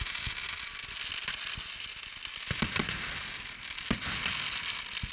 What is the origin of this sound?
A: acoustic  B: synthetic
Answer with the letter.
A